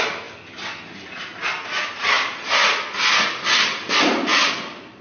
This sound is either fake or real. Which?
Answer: real